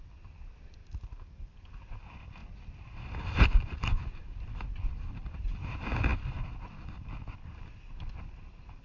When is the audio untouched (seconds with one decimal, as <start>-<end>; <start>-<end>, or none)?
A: 0.0-0.8; 1.4-8.8